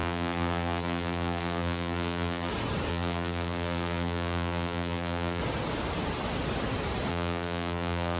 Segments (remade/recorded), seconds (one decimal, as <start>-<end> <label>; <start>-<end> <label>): 0.0-2.5 remade; 2.5-2.9 recorded; 2.9-5.4 remade; 5.4-7.1 recorded; 7.1-8.2 remade